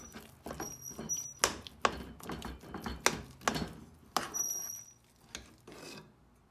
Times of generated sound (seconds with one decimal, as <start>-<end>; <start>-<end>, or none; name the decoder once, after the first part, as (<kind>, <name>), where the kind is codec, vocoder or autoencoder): none